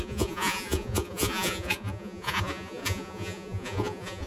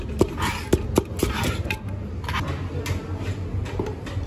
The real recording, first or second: second